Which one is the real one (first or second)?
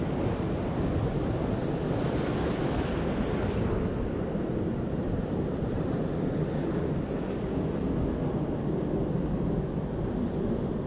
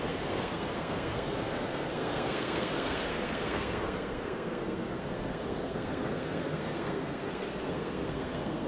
first